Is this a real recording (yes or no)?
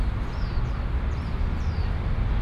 yes